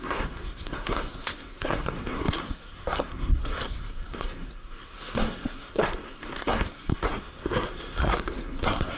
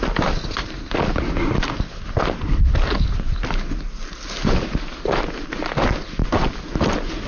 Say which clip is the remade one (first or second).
first